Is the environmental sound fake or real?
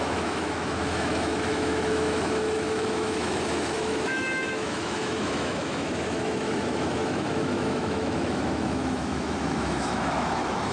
fake